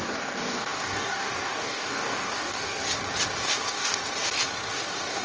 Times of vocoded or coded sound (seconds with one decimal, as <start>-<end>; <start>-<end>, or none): 0.0-2.8; 3.4-3.9; 4.7-5.2

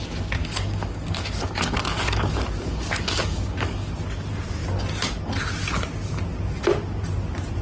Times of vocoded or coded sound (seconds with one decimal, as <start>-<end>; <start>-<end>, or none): 0.4-3.9

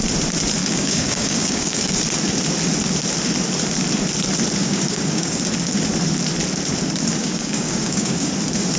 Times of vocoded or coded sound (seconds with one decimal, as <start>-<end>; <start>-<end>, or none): 0.6-2.0; 4.6-5.4; 7.2-8.3

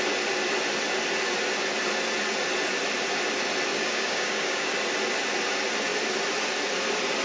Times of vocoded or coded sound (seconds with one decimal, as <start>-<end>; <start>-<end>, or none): 3.7-4.7

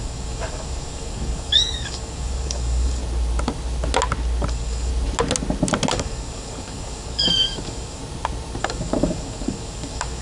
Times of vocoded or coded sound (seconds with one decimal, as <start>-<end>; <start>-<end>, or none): 0.0-3.0; 4.5-4.9; 5.9-8.0; 8.6-10.2

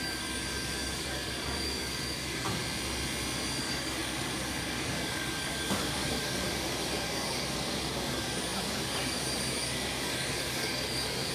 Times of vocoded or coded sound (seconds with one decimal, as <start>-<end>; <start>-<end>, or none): 0.0-2.6; 3.6-11.3